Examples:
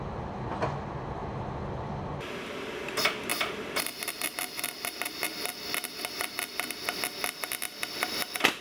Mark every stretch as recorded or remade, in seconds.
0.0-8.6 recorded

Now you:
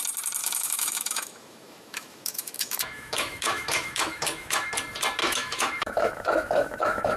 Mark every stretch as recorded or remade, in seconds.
0.0-0.4 recorded; 0.4-4.7 remade; 4.7-5.2 recorded; 5.2-7.2 remade

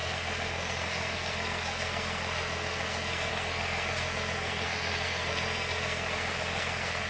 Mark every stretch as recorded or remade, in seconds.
0.0-7.1 remade

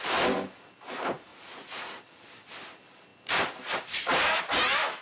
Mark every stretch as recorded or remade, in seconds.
0.0-1.3 recorded; 1.3-2.0 remade; 2.0-5.0 recorded

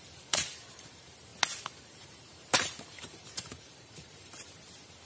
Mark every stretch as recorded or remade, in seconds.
0.0-1.3 remade; 1.3-1.9 recorded; 1.9-5.1 remade

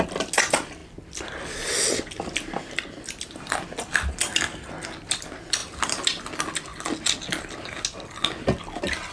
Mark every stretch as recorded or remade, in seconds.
0.0-9.1 recorded